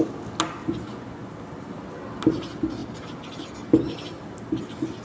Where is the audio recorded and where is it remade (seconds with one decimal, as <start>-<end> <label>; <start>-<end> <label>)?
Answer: 0.0-0.6 recorded; 0.6-1.3 remade; 1.3-5.0 recorded